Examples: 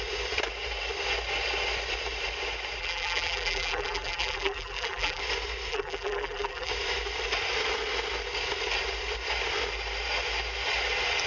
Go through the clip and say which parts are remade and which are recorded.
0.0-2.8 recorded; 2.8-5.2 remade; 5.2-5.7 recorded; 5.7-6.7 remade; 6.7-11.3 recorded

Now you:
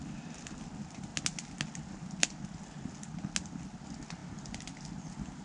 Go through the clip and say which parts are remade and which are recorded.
0.0-5.4 recorded

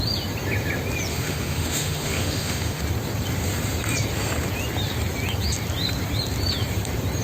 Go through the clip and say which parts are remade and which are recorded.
0.0-1.1 recorded; 1.1-2.8 remade; 2.8-7.2 recorded

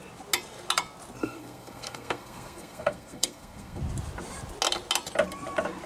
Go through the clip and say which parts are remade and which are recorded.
0.0-1.2 recorded; 1.2-3.8 remade; 3.8-5.9 recorded

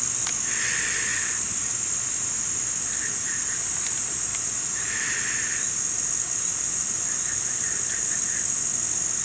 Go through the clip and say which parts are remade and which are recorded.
0.0-1.1 recorded; 1.1-1.7 remade; 1.7-4.3 recorded; 4.3-4.9 remade; 4.9-9.2 recorded